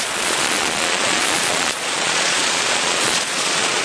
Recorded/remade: remade